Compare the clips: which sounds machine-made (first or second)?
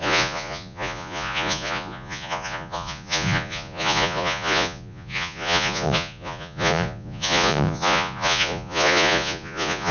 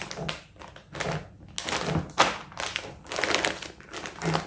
first